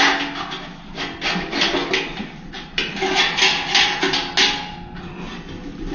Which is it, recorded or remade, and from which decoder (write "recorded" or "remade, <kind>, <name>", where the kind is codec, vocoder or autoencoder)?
recorded